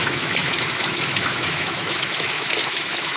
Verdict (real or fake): fake